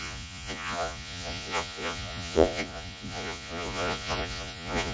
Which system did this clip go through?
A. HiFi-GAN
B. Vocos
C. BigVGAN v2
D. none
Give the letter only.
B